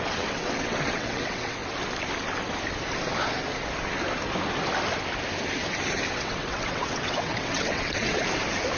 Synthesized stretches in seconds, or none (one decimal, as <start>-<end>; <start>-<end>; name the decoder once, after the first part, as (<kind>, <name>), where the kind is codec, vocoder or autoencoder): 0.0-1.6 (vocoder, WaveNeXt); 6.1-8.2